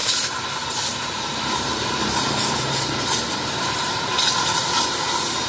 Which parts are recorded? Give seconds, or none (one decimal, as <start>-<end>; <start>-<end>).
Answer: 0.5-0.9; 4.2-5.5